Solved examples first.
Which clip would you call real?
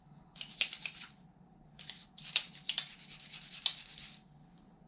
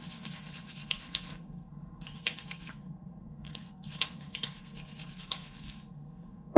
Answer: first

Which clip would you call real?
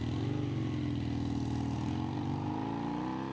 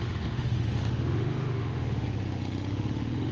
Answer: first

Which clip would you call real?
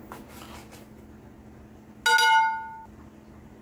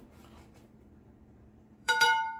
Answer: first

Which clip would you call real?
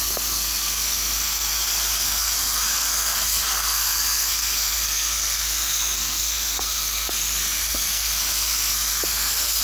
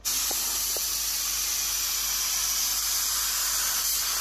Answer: second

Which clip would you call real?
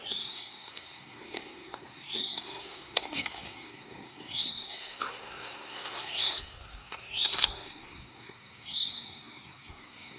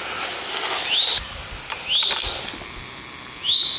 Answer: second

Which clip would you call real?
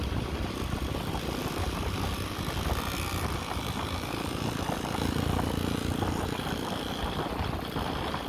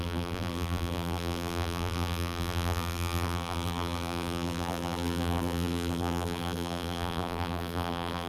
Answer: first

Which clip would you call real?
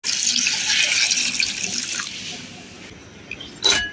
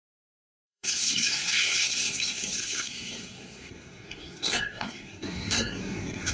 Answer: first